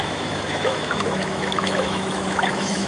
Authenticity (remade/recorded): remade